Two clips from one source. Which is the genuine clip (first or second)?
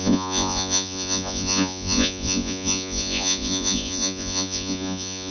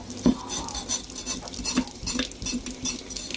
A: second